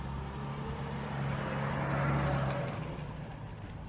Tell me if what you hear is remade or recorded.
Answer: recorded